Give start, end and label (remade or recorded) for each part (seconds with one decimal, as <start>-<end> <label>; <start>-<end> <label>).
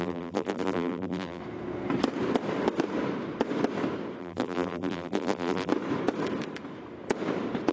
0.0-1.4 remade; 1.4-4.2 recorded; 4.2-5.7 remade; 5.7-7.7 recorded